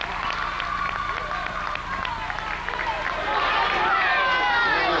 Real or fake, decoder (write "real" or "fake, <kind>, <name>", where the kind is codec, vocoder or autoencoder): real